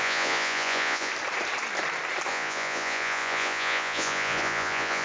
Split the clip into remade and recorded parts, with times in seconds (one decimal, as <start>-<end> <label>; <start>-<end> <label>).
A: 0.0-1.1 remade; 1.1-2.3 recorded; 2.3-5.0 remade